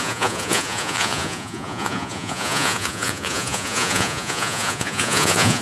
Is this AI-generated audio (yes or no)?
yes